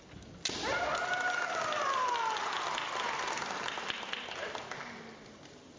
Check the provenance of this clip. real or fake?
real